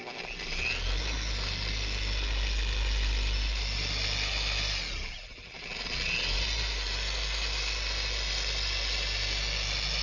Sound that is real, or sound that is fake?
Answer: real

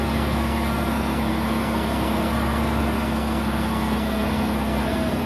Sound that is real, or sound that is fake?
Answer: fake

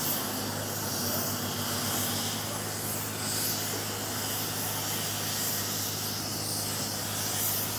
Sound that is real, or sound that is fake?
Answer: real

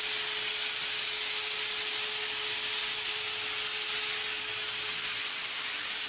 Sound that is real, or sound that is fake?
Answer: real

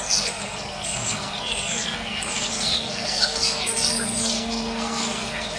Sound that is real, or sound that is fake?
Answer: fake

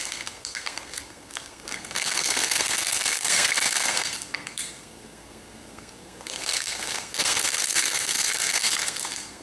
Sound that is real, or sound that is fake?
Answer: fake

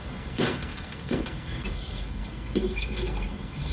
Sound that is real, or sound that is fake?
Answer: fake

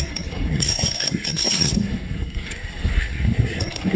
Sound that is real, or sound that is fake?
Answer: fake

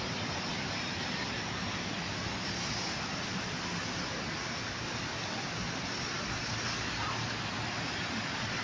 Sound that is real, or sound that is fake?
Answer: real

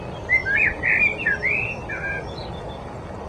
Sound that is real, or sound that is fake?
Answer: real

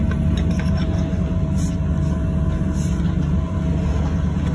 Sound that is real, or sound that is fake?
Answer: real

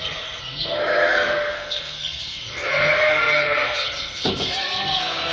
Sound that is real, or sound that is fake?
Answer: fake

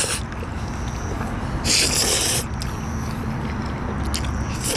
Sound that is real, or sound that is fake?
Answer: real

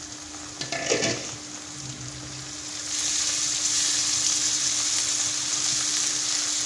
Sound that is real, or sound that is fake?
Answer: real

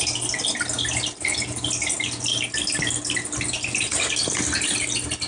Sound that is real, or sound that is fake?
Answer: real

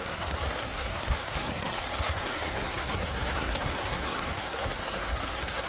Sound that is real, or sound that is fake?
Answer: fake